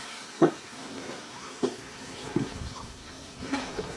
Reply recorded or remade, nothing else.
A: remade